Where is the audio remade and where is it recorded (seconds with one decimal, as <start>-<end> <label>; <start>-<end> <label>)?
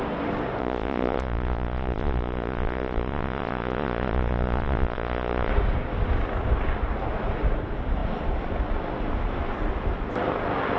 0.0-0.6 recorded; 0.6-5.5 remade; 5.5-10.8 recorded